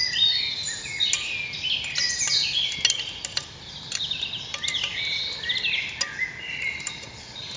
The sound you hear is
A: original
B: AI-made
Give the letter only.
A